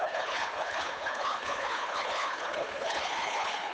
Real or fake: fake